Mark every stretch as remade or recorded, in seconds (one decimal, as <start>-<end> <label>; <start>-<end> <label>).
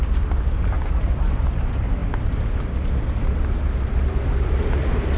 0.0-5.2 recorded